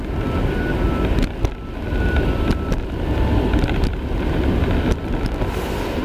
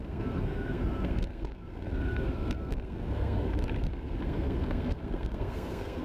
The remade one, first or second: second